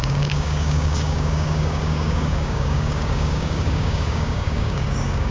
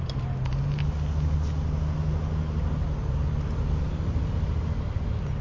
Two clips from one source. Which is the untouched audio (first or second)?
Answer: second